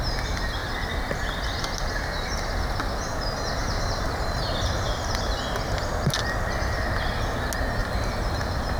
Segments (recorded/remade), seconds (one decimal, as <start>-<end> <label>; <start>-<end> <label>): 0.0-3.6 recorded; 3.6-4.7 remade; 4.7-7.8 recorded; 7.8-8.3 remade; 8.3-8.8 recorded